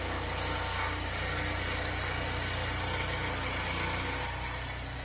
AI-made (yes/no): no